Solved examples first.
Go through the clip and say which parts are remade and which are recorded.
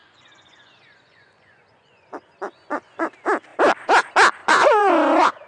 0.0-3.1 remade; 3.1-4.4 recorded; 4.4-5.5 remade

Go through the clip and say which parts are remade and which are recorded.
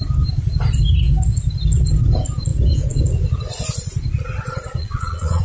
0.0-4.8 recorded; 4.8-5.4 remade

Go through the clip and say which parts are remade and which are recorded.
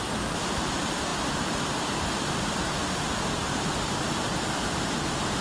0.0-5.4 recorded